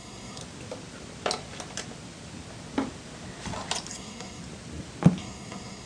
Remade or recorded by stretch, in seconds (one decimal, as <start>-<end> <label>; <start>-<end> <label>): 0.0-0.4 remade; 0.4-3.9 recorded; 3.9-4.4 remade; 4.4-5.2 recorded; 5.2-5.9 remade